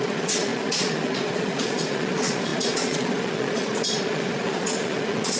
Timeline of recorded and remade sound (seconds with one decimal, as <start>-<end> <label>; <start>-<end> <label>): 0.0-5.4 remade